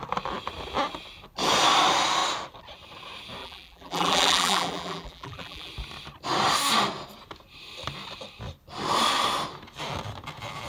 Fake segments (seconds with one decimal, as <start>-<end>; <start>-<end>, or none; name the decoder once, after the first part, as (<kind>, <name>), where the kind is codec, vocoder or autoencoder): 3.4-5.7 (vocoder, BigVGAN v2)